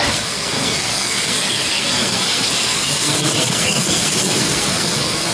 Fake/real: fake